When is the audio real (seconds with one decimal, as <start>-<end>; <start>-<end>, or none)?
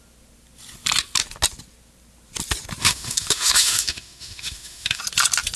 0.0-2.8; 5.0-5.6